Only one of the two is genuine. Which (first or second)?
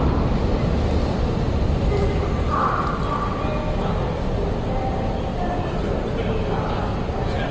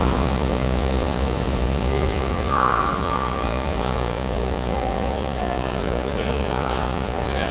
first